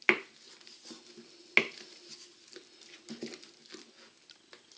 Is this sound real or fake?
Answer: real